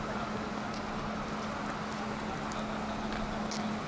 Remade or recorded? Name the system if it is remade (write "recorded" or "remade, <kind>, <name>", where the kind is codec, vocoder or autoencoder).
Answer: recorded